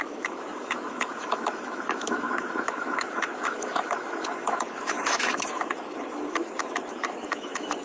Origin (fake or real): fake